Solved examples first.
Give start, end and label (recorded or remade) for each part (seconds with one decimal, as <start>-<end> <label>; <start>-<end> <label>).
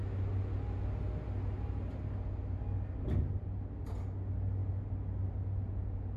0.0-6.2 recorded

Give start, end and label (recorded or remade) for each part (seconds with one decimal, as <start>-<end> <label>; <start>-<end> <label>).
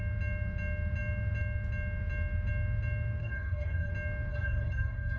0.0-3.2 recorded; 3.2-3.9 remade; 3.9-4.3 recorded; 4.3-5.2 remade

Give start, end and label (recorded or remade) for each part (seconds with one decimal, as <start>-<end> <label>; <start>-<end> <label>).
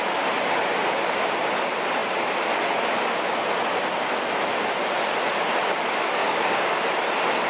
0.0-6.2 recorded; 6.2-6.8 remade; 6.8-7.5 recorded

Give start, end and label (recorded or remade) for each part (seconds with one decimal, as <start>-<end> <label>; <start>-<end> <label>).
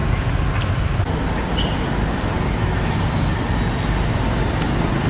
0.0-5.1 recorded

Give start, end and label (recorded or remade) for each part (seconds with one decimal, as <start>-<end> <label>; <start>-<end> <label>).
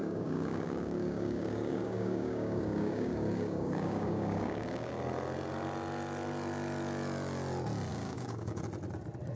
0.0-4.9 remade; 4.9-7.9 recorded; 7.9-8.6 remade; 8.6-9.4 recorded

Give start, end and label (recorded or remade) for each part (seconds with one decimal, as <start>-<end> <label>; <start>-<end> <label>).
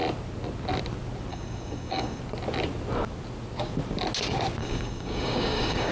0.0-1.3 recorded; 1.3-2.2 remade; 2.2-4.6 recorded; 4.6-5.9 remade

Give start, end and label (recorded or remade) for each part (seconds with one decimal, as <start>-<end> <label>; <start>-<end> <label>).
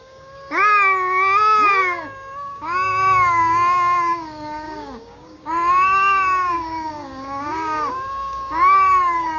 0.0-0.6 remade; 0.6-1.8 recorded; 1.8-9.4 remade